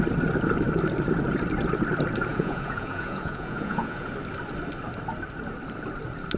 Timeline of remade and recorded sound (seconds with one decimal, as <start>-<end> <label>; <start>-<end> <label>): 0.0-2.3 recorded; 2.3-4.1 remade; 4.1-6.4 recorded